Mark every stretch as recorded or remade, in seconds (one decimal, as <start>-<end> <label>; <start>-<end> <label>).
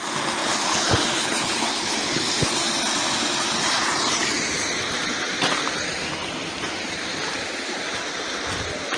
0.0-0.4 recorded; 0.4-2.5 remade; 2.5-9.0 recorded